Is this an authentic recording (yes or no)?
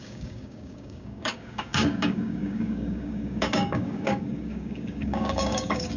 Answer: no